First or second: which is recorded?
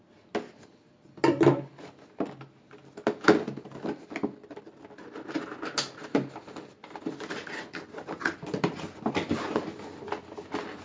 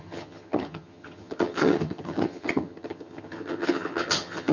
first